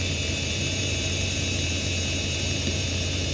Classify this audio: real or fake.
fake